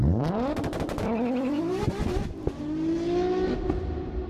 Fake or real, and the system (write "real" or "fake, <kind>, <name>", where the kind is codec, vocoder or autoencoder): real